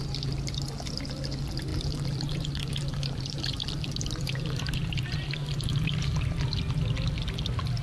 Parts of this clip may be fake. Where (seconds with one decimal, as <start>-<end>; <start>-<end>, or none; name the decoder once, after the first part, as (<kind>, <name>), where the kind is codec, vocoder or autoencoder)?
1.7-6.4 (vocoder, BigVGAN v2)